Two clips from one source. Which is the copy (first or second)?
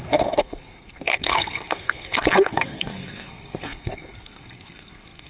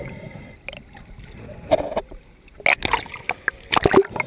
first